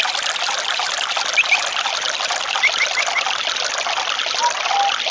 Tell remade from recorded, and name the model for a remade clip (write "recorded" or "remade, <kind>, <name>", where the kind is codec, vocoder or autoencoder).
recorded